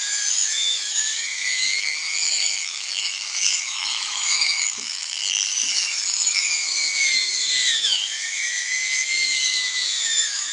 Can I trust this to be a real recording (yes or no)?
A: no